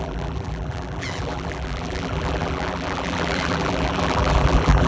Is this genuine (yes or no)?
no